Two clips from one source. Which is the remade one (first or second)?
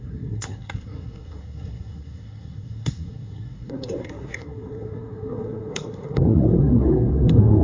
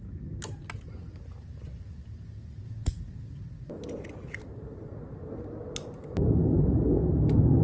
first